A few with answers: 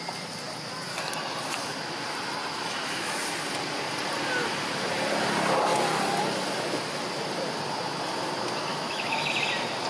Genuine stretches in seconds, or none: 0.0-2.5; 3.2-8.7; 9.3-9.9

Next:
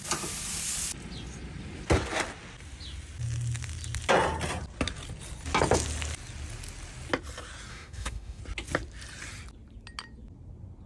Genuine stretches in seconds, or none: 0.0-7.7; 8.4-10.9

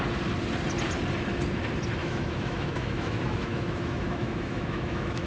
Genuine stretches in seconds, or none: 0.0-2.0

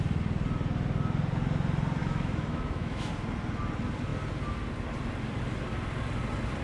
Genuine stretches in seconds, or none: 0.0-2.0; 3.1-6.6

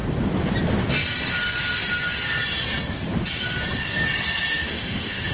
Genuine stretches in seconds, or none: 0.0-4.5

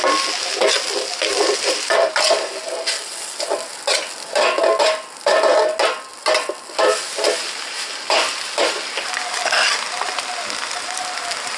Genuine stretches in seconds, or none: 0.0-11.6

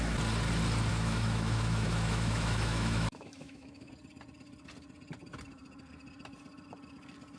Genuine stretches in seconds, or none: 0.0-0.9; 3.9-7.4

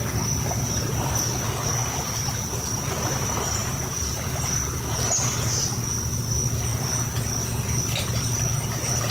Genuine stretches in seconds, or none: 0.0-9.1